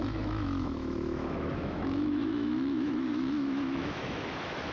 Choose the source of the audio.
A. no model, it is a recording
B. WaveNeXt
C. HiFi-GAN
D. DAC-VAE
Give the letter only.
D